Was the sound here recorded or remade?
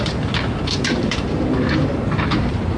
remade